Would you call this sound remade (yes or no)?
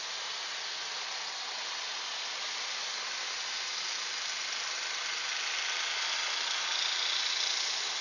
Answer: no